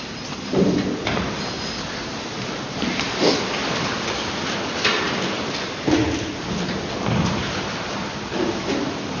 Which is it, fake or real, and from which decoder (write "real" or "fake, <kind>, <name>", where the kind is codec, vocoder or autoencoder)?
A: fake, vocoder, BigVGAN v2